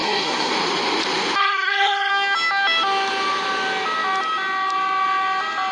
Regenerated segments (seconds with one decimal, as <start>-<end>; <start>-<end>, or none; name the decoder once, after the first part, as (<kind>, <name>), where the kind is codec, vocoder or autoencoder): 0.0-0.5 (codec, SNAC); 1.4-2.1